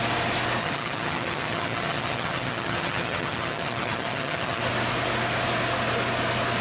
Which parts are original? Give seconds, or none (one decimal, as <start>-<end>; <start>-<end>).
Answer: 0.0-0.6; 4.6-6.6